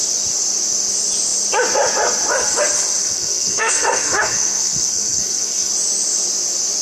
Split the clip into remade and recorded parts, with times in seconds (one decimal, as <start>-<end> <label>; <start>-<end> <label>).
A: 0.0-3.0 recorded; 3.0-5.7 remade; 5.7-6.8 recorded